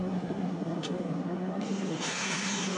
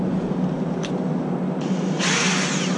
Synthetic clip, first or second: first